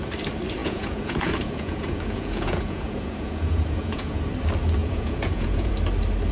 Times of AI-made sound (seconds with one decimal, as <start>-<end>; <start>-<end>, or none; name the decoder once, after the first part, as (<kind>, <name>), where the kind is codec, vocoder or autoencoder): 0.6-4.2 (vocoder, Vocos); 4.8-5.7